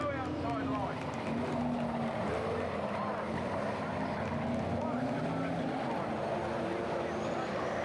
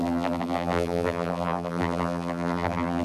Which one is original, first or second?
first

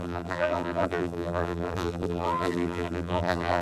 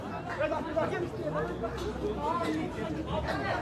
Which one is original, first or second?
second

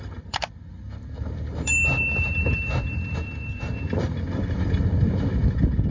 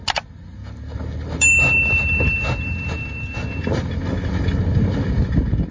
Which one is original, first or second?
second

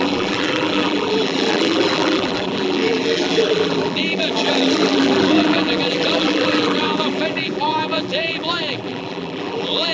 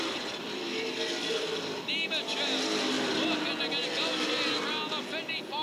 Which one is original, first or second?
second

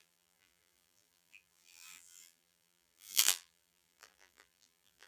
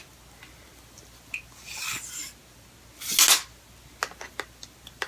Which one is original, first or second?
second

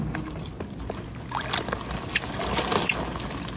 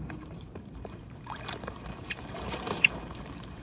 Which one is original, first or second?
first